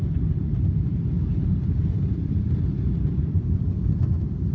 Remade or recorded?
remade